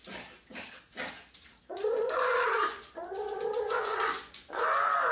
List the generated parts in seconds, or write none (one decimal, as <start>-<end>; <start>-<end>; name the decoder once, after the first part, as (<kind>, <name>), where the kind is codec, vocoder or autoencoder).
1.6-5.1 (vocoder, Vocos)